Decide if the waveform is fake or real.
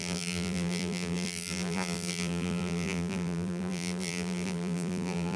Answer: fake